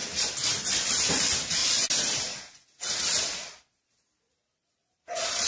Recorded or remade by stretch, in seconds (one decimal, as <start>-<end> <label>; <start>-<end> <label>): 0.0-1.6 remade; 1.6-4.7 recorded; 4.7-5.5 remade